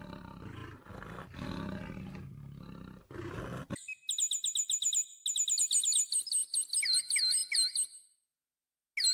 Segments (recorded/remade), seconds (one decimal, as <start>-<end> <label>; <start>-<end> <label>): 0.0-9.1 recorded